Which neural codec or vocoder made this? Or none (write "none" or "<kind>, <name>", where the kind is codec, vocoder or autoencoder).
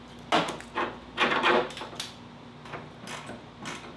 none